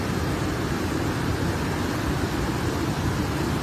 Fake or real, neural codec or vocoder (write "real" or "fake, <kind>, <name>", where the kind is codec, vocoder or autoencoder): fake, vocoder, BigVGAN v2